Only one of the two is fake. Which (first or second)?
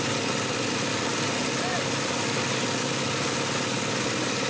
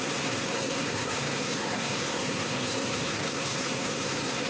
second